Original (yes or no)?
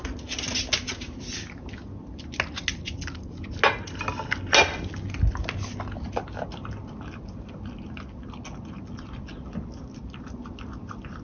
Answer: yes